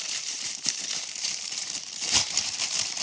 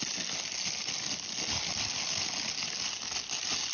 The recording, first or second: second